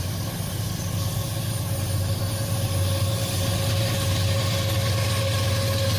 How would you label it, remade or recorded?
recorded